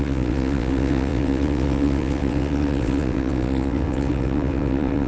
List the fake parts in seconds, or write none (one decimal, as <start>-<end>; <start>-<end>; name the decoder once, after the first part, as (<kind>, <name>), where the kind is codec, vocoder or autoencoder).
0.0-5.1 (vocoder, WaveNeXt)